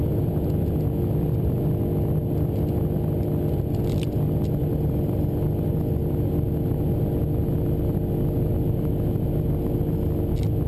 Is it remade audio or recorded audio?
recorded